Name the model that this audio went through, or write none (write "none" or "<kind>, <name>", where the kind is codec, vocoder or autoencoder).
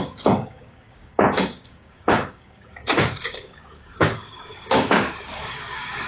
codec, DAC